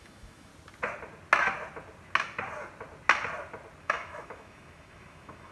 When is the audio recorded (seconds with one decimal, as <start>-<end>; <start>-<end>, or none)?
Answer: 0.5-3.8